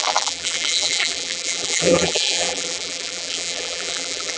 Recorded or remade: remade